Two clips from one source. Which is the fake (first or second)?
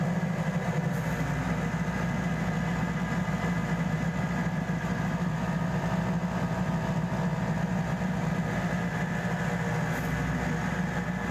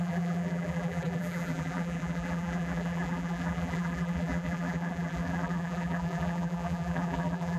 second